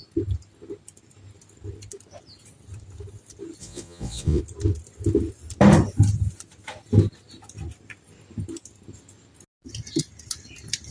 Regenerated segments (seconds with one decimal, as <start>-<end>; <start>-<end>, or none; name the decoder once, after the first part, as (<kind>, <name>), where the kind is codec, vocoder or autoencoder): 3.6-4.4 (vocoder, Vocos)